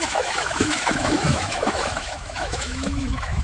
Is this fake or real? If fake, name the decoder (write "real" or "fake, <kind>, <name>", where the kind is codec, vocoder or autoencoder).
fake, autoencoder, DAC-VAE